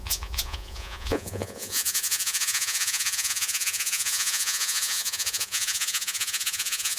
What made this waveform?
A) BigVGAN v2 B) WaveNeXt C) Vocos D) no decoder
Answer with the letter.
C